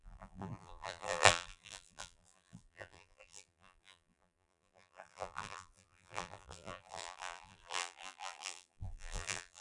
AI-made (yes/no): yes